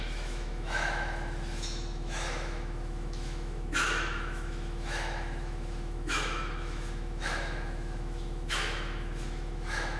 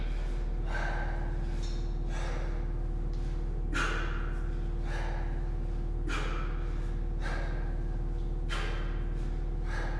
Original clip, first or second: second